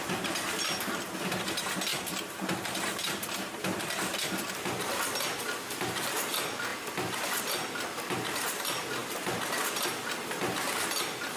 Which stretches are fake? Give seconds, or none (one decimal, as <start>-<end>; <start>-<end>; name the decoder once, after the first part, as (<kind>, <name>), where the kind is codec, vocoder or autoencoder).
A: 1.9-6.3 (vocoder, BigVGAN v2)